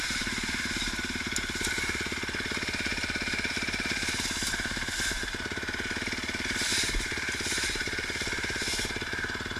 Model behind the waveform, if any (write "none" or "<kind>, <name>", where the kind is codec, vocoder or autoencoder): vocoder, BigVGAN v2